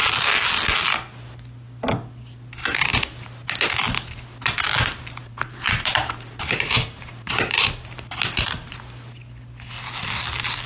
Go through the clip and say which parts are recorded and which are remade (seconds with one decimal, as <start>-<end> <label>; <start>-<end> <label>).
0.0-2.7 recorded; 2.7-3.3 remade; 3.3-5.2 recorded; 5.2-8.1 remade; 8.1-10.7 recorded